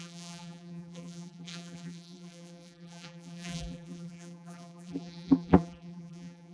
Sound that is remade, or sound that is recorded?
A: remade